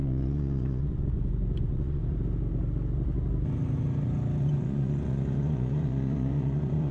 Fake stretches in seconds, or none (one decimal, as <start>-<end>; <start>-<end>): 0.0-2.0; 4.4-6.9